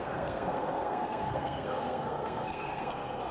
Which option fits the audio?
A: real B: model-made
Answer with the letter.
B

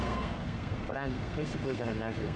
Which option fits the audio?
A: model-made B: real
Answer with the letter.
A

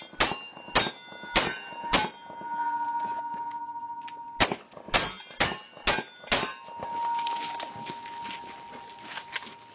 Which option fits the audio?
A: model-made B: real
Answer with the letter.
B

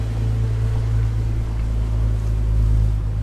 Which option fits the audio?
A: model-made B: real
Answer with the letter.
B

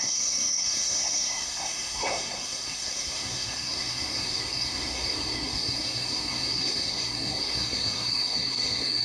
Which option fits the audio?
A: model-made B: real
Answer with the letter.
A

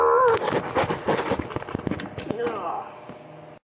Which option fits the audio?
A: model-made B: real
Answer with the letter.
B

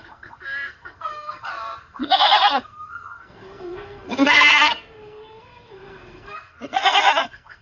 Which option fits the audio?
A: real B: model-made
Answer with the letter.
B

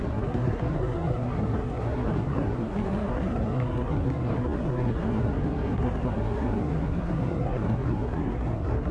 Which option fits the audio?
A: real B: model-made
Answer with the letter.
B